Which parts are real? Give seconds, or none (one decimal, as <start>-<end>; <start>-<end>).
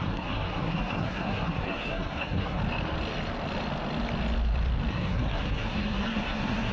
2.6-4.9